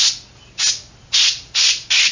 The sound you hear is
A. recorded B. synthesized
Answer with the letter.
A